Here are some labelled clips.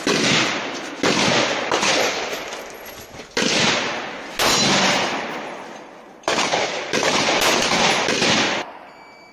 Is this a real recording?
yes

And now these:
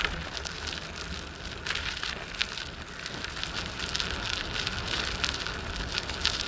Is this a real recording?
yes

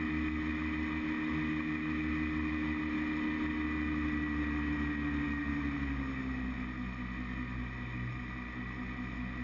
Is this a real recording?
yes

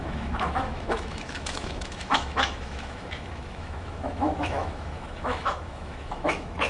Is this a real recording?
no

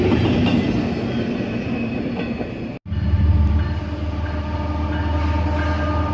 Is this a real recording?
yes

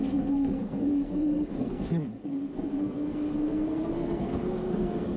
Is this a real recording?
no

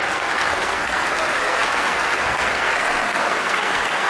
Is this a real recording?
no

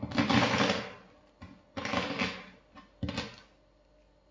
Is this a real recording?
yes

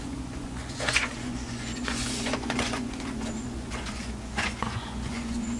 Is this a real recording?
no